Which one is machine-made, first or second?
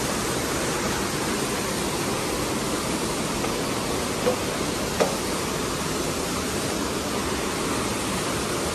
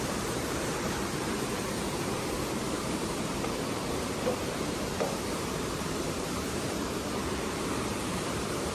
second